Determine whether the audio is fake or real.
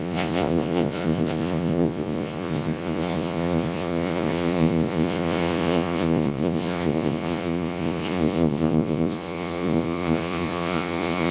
fake